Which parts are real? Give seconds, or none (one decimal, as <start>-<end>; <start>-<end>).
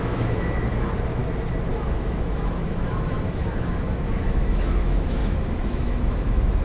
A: 1.2-1.7